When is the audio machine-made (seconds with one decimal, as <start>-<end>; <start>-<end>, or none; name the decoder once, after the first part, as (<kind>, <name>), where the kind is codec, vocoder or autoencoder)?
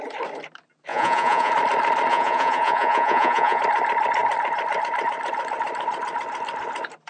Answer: 0.9-1.5 (vocoder, Vocos); 2.1-3.6